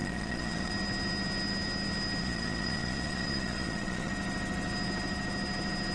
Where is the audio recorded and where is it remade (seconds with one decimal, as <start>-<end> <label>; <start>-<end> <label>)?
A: 0.0-0.7 remade; 0.7-2.2 recorded; 2.2-4.1 remade; 4.1-5.9 recorded